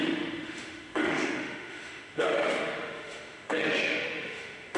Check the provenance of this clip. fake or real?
fake